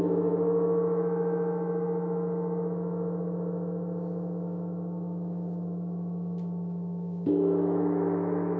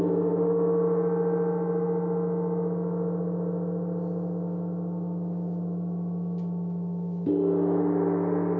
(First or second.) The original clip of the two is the second